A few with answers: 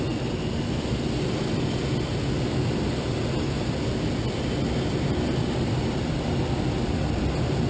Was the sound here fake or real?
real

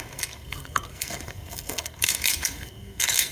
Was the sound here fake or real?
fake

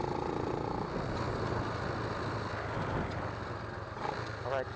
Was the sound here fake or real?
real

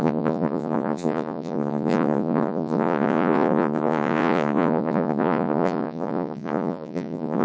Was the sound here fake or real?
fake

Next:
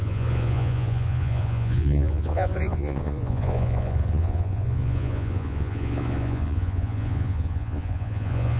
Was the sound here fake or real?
fake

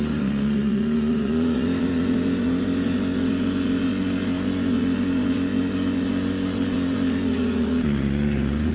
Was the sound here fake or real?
fake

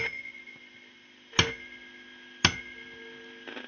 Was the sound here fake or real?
real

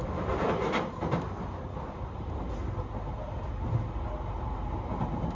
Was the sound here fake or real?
real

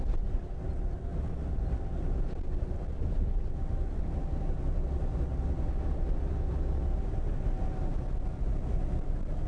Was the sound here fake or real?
real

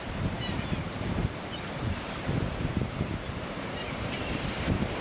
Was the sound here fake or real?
fake